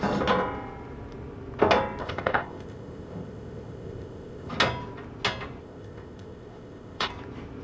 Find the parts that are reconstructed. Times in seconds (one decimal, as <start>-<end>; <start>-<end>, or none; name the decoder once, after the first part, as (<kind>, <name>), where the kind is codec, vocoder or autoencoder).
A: 2.0-4.5 (codec, ZipCodec); 5.6-7.1